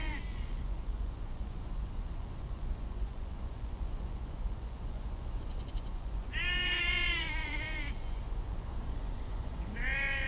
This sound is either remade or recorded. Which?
remade